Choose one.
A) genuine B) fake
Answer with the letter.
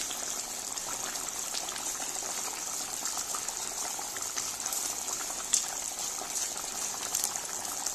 A